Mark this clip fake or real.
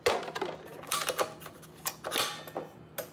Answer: real